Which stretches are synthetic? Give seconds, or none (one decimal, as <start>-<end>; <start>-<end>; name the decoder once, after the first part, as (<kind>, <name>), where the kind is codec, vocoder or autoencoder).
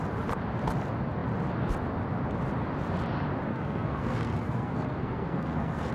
3.5-5.9 (codec, SNAC)